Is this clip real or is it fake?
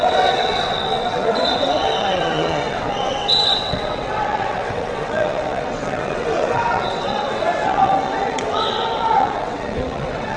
fake